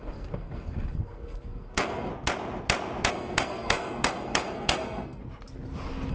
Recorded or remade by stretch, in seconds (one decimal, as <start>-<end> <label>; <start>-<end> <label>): 0.0-2.1 remade; 2.1-3.1 recorded; 3.1-5.2 remade; 5.2-6.1 recorded